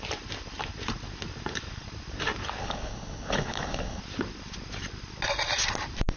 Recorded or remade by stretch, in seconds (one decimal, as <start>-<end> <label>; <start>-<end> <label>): 0.0-2.6 recorded; 2.6-4.0 remade; 4.0-6.2 recorded